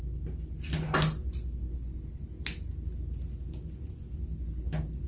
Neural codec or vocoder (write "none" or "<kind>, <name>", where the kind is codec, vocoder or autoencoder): none